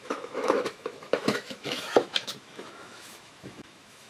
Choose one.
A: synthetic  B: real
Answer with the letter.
A